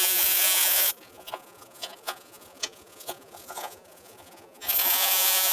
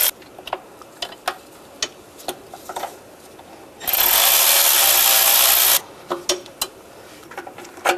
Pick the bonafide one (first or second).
second